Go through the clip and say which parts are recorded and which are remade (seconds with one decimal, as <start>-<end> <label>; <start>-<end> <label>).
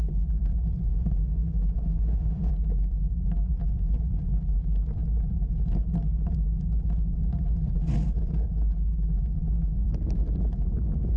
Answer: 0.0-0.9 recorded; 0.9-2.5 remade; 2.5-11.2 recorded